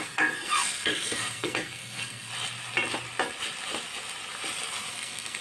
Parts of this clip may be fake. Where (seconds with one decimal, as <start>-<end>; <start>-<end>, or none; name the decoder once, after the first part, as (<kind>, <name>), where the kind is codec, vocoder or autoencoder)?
0.0-2.3 (codec, SNAC); 4.9-5.4